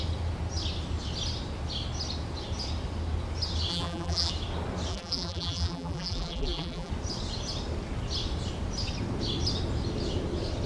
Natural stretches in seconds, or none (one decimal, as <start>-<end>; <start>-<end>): 0.0-3.7; 4.3-4.9; 6.9-10.7